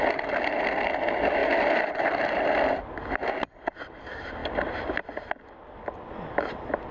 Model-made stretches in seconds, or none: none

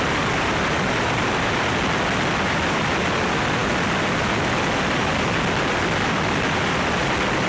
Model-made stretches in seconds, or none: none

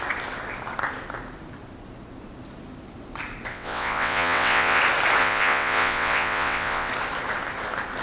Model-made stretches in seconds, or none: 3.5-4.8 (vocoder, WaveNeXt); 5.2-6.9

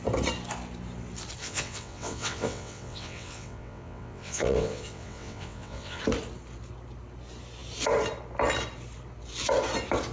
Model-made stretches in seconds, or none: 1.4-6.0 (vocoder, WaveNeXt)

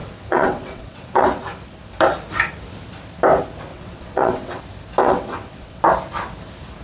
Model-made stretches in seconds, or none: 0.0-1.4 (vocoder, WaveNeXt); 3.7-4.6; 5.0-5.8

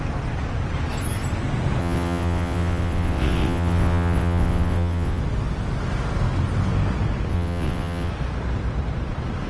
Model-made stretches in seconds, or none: 1.8-5.2 (vocoder, WaveNeXt); 7.3-8.1

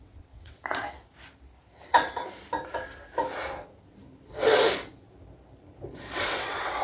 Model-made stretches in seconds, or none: 0.0-0.6 (vocoder, WaveNeXt); 1.8-2.2; 6.3-6.8